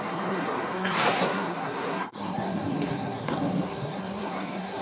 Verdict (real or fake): fake